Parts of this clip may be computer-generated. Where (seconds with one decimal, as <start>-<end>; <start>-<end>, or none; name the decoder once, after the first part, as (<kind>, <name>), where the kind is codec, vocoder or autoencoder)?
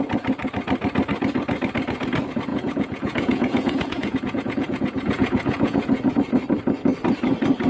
2.5-6.1 (vocoder, Vocos)